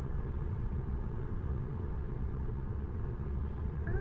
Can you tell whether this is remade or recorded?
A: remade